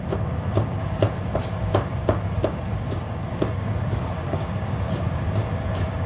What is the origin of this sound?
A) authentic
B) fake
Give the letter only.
B